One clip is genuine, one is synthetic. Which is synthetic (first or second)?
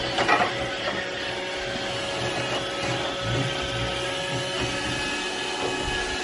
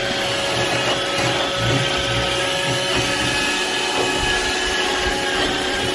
second